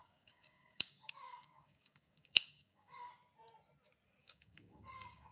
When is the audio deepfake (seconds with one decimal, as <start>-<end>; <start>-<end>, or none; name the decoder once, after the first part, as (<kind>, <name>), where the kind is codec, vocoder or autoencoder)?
0.0-3.1 (codec, DAC); 4.2-5.3